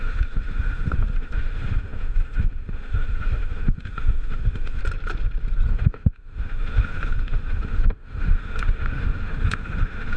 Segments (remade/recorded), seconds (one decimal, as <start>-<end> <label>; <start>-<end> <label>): 0.0-4.8 remade; 4.8-5.7 recorded; 5.7-10.2 remade